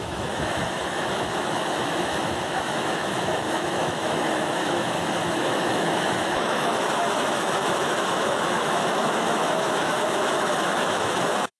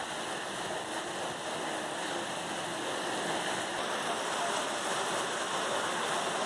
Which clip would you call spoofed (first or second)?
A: first